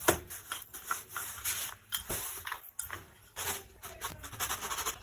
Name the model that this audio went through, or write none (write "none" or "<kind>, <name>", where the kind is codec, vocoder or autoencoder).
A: none